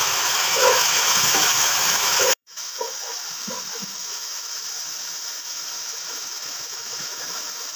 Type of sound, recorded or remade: remade